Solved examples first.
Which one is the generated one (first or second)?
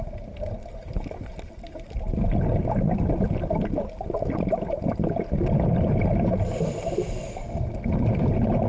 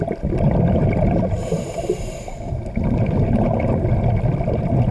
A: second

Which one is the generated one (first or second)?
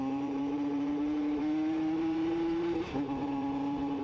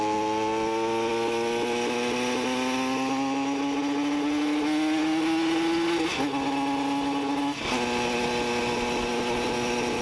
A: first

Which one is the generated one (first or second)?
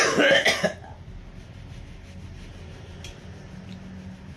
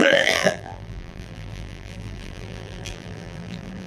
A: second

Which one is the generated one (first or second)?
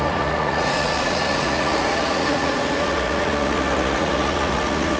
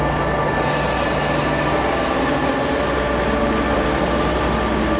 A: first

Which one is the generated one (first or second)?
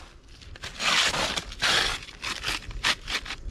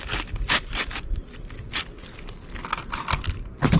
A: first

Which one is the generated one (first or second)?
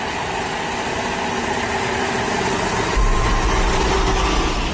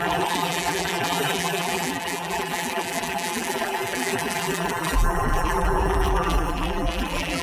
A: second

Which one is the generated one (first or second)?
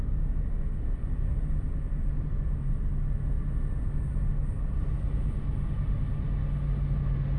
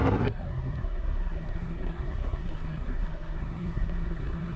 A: second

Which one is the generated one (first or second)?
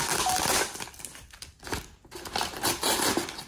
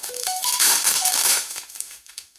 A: second